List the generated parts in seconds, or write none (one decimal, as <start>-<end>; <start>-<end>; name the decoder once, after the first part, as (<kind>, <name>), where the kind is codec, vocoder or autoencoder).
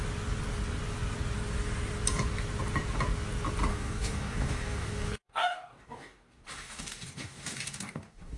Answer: 3.7-8.4 (codec, DAC)